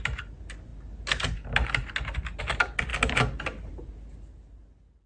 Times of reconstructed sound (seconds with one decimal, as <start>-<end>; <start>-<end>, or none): none